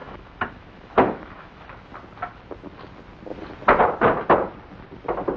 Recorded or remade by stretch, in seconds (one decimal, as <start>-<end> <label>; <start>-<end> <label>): 0.0-1.9 remade; 1.9-5.4 recorded